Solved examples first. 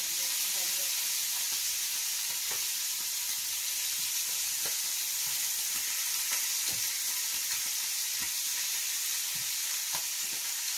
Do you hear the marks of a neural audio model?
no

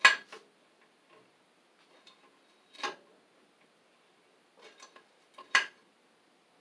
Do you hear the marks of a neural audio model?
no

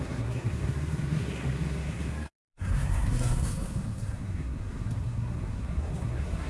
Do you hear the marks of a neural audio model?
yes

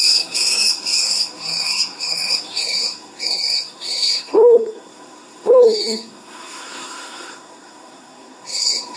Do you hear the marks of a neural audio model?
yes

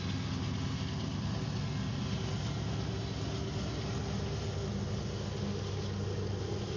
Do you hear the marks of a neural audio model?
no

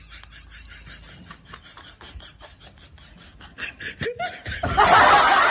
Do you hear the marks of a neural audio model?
no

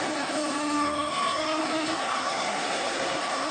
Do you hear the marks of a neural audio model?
yes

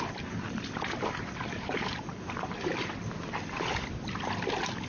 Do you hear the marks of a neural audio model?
no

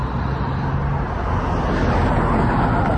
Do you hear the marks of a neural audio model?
no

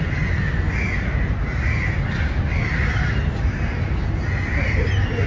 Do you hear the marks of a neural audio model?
no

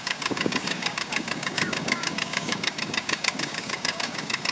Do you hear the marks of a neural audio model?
yes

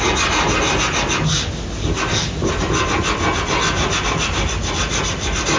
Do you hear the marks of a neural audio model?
no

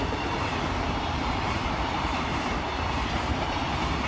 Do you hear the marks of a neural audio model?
yes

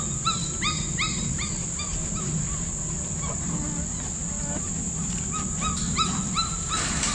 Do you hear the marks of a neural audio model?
no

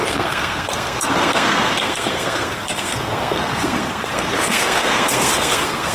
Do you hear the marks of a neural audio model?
yes